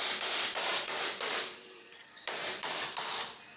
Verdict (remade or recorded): remade